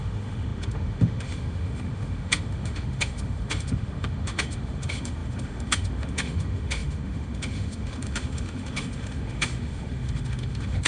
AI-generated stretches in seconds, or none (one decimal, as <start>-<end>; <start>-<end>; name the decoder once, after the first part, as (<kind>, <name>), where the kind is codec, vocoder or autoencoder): 0.0-10.9 (autoencoder, DAC-VAE)